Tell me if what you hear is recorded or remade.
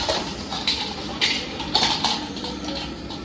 recorded